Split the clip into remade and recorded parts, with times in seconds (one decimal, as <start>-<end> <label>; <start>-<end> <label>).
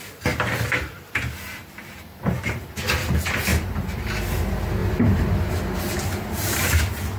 0.0-3.5 recorded; 3.5-4.1 remade; 4.1-4.8 recorded; 4.8-6.8 remade; 6.8-7.2 recorded